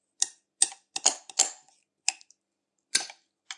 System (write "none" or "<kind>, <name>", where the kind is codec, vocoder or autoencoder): none